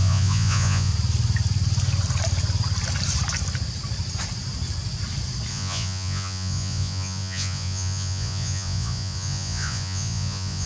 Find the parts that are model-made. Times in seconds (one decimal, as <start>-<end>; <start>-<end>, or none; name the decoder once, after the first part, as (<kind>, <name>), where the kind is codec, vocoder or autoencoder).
0.0-0.9 (vocoder, Vocos); 5.5-10.7